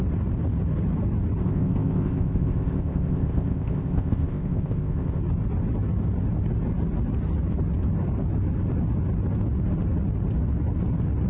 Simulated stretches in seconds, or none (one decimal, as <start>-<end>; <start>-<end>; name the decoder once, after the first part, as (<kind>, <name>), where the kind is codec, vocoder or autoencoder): 1.4-5.2 (codec, ZipCodec)